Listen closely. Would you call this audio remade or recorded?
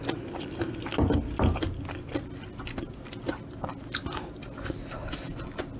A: recorded